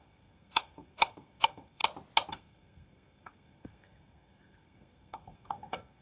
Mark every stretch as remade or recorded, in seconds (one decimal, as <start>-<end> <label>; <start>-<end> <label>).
0.0-1.8 remade; 1.8-2.3 recorded; 2.3-6.0 remade

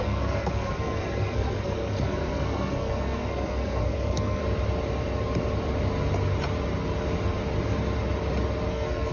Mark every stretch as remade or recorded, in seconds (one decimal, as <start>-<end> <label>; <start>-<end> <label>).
0.0-4.4 remade; 4.4-8.7 recorded; 8.7-9.1 remade

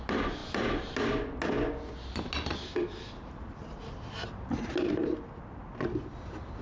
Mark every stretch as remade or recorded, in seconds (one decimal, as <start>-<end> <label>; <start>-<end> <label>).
0.0-6.6 recorded

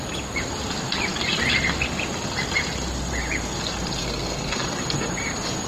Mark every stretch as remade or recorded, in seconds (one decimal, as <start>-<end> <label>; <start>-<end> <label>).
0.0-4.0 recorded; 4.0-4.6 remade; 4.6-5.7 recorded

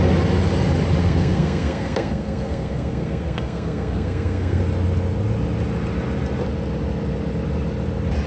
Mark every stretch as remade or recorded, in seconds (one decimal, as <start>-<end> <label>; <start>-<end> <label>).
0.0-1.0 recorded; 1.0-4.6 remade; 4.6-8.3 recorded

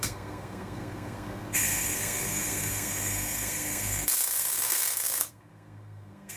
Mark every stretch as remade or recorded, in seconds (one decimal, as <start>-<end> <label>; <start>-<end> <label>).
0.0-6.4 remade

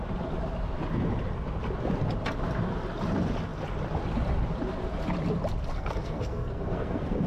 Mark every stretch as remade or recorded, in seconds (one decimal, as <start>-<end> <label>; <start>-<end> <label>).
0.0-5.7 recorded; 5.7-7.3 remade

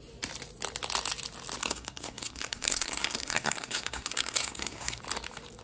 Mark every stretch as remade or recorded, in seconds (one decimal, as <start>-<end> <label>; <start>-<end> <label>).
0.0-1.6 recorded; 1.6-5.0 remade; 5.0-5.6 recorded